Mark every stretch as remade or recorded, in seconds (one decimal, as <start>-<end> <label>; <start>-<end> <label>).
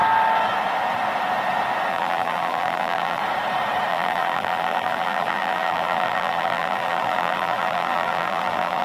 0.0-1.9 recorded; 1.9-3.2 remade; 3.2-3.9 recorded; 3.9-8.8 remade